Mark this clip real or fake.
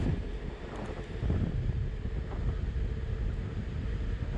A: real